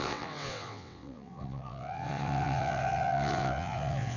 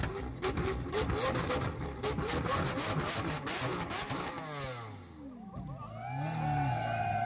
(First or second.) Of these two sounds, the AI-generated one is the first